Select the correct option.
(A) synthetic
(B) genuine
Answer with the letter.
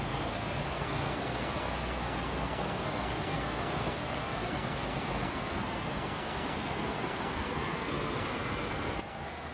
A